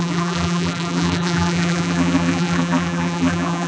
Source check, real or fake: fake